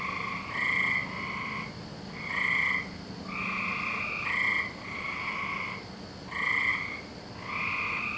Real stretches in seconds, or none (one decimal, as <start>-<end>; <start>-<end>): 0.0-8.2